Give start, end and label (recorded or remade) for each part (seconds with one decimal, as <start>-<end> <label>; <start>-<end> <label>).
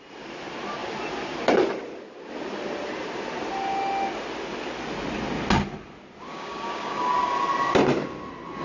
0.0-6.3 recorded; 6.3-7.1 remade; 7.1-8.6 recorded